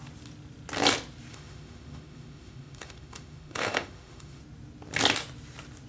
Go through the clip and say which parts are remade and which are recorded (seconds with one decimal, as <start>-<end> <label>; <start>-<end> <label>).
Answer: 0.0-1.3 recorded; 1.3-4.4 remade; 4.4-5.9 recorded